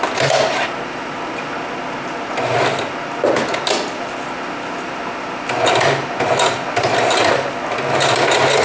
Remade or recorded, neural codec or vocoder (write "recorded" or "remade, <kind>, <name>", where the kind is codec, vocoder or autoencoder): recorded